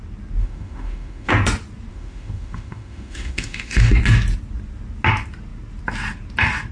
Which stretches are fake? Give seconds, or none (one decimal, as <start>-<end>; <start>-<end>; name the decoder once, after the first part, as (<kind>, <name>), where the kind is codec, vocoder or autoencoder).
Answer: 0.4-1.3 (autoencoder, DAC-VAE); 1.9-3.9